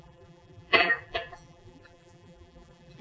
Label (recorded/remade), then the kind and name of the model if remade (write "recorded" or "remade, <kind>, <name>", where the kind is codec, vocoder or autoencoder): remade, vocoder, BigVGAN v2